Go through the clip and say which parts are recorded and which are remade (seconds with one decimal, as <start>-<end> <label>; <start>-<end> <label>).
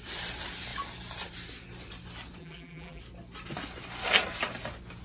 0.0-2.4 recorded; 2.4-3.0 remade; 3.0-5.0 recorded